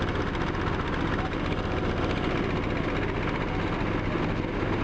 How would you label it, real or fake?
real